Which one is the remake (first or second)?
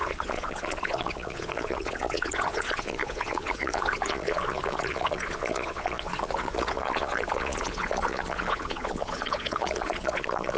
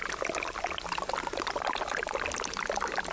first